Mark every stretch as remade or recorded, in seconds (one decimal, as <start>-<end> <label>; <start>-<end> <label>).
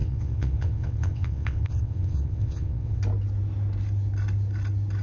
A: 0.0-3.0 remade; 3.0-5.0 recorded